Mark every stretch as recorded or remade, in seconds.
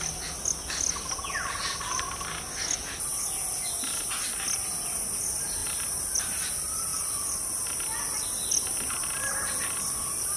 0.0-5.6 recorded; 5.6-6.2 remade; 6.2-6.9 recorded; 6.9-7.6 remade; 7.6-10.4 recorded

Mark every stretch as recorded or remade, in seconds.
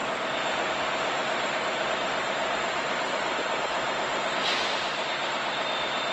0.0-6.1 recorded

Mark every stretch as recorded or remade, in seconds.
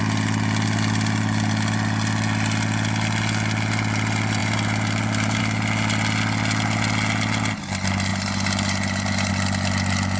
0.0-4.4 recorded; 4.4-5.4 remade; 5.4-8.1 recorded; 8.1-9.3 remade; 9.3-10.2 recorded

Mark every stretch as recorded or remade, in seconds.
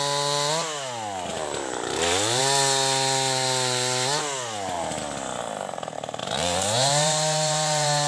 0.0-1.3 recorded; 1.3-2.4 remade; 2.4-6.2 recorded; 6.2-8.1 remade